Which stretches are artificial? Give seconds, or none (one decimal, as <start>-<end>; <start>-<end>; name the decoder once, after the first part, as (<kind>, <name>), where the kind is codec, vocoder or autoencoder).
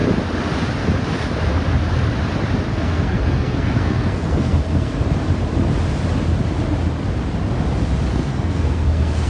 2.7-4.9 (codec, SNAC); 8.1-9.3